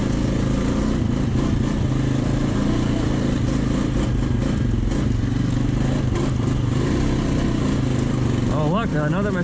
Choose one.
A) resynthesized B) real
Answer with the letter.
B